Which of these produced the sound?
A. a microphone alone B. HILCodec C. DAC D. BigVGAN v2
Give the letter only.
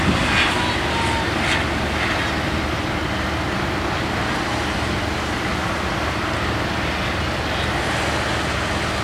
A